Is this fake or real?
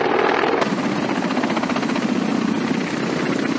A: real